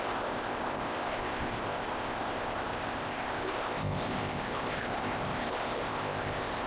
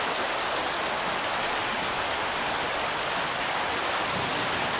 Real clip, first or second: second